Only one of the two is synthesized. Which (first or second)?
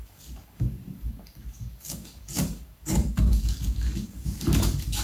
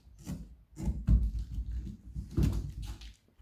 first